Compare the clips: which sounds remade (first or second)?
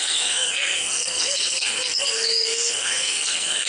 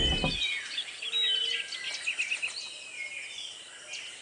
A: first